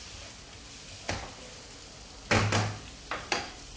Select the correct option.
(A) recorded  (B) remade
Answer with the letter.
A